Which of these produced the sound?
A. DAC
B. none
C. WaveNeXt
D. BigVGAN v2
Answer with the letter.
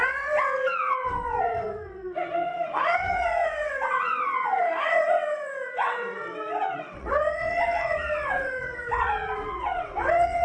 C